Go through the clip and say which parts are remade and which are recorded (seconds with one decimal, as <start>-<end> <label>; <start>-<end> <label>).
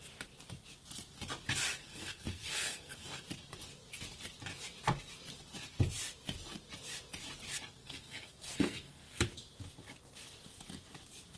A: 0.0-1.8 recorded; 1.8-3.2 remade; 3.2-7.8 recorded; 7.8-9.2 remade; 9.2-11.4 recorded